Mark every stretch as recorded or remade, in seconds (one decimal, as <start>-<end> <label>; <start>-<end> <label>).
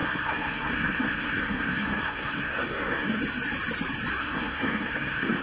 0.0-3.2 remade; 3.2-4.2 recorded; 4.2-5.4 remade